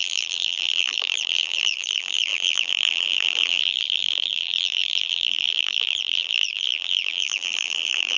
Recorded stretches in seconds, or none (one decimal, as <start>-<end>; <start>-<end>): none